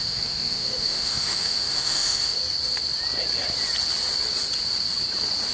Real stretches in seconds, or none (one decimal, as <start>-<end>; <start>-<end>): 2.4-5.5